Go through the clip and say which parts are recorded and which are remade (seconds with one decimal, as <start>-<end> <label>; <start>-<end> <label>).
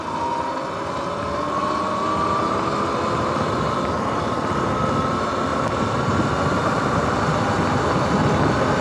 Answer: 0.0-5.5 recorded; 5.5-8.2 remade; 8.2-8.8 recorded